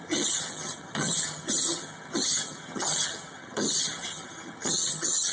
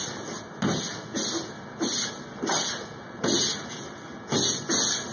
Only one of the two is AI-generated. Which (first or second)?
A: first